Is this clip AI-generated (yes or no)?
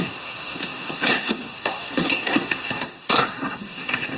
yes